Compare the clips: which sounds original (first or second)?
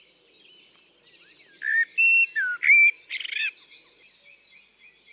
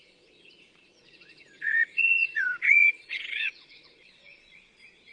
first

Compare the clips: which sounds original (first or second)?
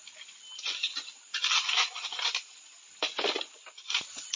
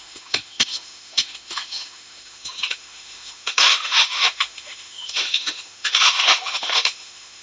first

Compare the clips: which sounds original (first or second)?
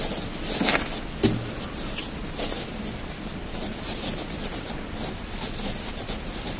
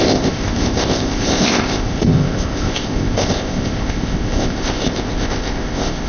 first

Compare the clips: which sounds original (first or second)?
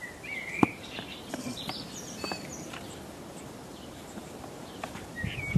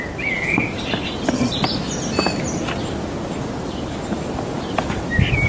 second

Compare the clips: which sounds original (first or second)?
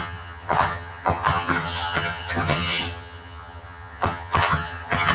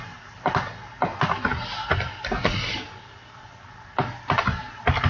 second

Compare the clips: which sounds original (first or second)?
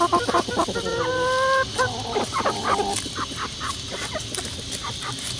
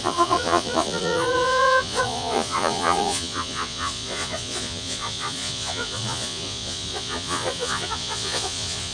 first